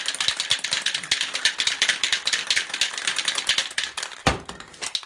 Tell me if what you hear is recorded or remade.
recorded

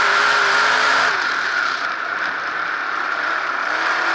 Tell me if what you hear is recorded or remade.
remade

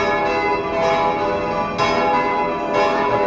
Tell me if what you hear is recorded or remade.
recorded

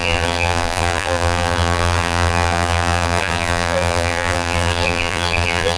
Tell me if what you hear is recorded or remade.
remade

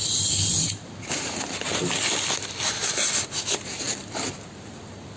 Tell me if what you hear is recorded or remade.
recorded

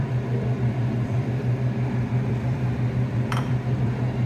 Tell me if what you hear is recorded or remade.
remade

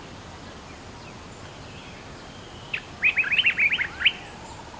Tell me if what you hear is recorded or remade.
recorded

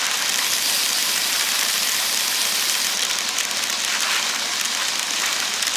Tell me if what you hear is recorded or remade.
recorded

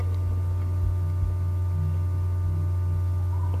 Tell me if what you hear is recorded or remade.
recorded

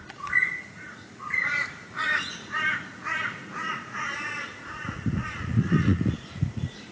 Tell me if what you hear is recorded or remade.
remade